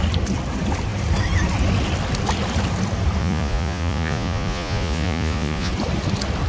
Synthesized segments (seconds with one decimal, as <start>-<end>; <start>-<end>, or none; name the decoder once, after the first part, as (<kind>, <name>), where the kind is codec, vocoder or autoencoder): 3.2-5.7 (vocoder, Vocos)